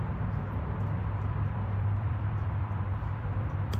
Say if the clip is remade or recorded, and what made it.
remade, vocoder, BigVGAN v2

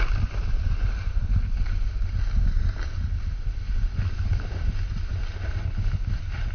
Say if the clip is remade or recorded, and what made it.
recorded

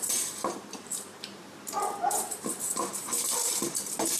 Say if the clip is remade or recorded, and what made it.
remade, vocoder, BigVGAN v2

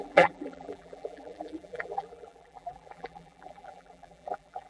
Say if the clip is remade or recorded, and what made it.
remade, vocoder, BigVGAN v2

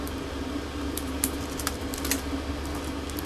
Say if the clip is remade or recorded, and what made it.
recorded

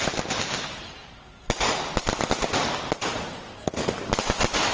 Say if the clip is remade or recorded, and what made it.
recorded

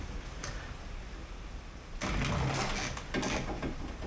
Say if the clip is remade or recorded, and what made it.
recorded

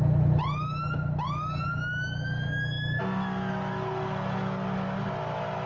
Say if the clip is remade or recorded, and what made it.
recorded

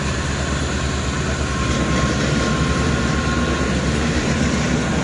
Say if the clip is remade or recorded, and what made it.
remade, vocoder, BigVGAN v2